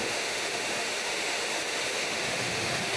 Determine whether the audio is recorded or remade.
remade